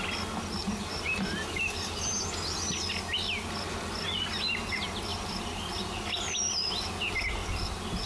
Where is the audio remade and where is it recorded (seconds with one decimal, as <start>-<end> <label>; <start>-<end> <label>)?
0.0-0.6 recorded; 0.6-1.7 remade; 1.7-5.1 recorded; 5.1-6.4 remade; 6.4-7.4 recorded; 7.4-8.1 remade